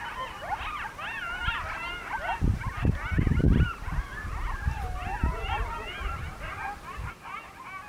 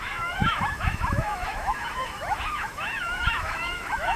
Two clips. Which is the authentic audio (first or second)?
first